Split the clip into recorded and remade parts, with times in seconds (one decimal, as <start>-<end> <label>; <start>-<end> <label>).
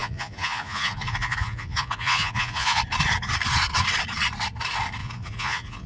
0.0-2.8 remade; 2.8-5.0 recorded; 5.0-5.9 remade